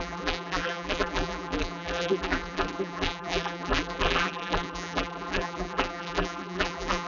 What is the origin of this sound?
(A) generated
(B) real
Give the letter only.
A